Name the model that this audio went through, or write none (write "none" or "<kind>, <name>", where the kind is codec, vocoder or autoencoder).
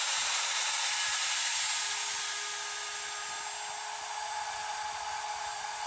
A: none